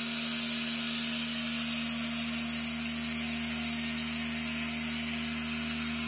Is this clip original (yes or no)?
yes